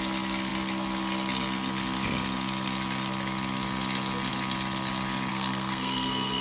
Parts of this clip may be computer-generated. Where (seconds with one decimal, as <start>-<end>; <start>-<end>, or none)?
5.3-6.4